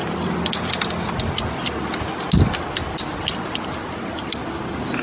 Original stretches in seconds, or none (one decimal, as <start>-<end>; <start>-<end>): 0.0-5.0